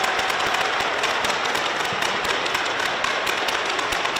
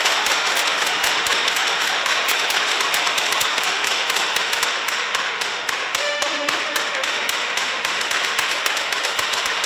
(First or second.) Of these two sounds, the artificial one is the second